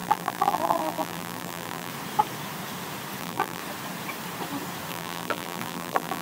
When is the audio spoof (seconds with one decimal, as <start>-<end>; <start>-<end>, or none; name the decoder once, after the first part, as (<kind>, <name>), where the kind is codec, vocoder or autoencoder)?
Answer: 0.0-1.9 (vocoder, BigVGAN v2); 3.2-3.6; 4.9-6.2

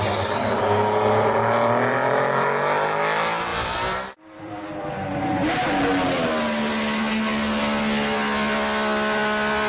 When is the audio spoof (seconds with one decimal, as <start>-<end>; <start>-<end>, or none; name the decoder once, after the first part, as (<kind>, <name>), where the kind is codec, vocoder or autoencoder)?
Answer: 3.5-4.9 (vocoder, BigVGAN v2)

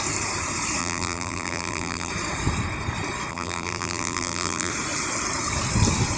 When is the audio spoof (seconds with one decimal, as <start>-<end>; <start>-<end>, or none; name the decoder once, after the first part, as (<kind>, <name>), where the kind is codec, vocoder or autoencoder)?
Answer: 0.8-2.1 (vocoder, BigVGAN v2); 3.3-4.7

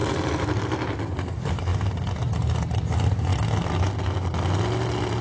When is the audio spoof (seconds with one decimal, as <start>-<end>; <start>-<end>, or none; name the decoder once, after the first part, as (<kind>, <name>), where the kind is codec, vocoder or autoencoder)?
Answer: 0.0-1.1 (vocoder, BigVGAN v2); 3.3-4.0

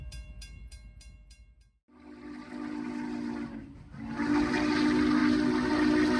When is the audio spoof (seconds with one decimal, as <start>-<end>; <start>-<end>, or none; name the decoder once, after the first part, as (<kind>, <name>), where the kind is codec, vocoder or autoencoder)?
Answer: 1.9-2.4 (vocoder, BigVGAN v2)

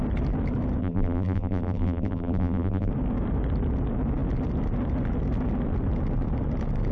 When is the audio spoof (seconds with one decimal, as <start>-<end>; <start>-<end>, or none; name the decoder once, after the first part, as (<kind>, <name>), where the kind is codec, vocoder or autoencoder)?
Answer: 0.8-2.9 (vocoder, BigVGAN v2)

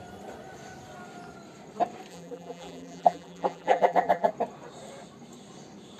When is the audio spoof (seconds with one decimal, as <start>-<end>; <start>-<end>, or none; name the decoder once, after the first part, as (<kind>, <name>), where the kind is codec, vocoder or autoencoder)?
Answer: 2.1-4.3 (vocoder, BigVGAN v2)